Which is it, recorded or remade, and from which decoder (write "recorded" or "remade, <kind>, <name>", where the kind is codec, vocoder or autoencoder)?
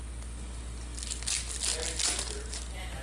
recorded